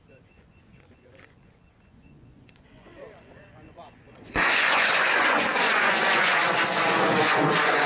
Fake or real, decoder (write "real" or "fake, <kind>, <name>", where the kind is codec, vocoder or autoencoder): fake, vocoder, Vocos